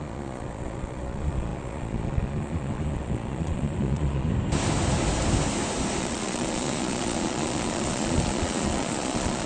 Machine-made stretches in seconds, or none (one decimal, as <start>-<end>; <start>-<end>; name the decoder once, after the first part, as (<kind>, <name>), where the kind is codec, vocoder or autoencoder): 0.0-4.3 (vocoder, Vocos); 6.0-9.5